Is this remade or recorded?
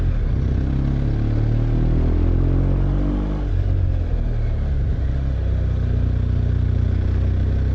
recorded